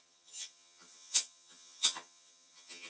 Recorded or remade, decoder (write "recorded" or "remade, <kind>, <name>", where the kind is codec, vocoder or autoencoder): remade, vocoder, HiFi-GAN